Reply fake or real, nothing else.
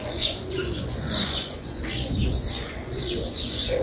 fake